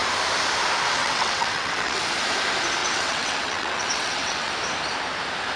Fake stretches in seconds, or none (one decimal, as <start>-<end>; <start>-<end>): 1.0-2.0; 2.8-4.5